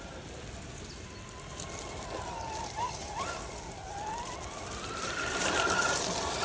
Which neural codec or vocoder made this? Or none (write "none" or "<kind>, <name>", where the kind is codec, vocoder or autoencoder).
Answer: none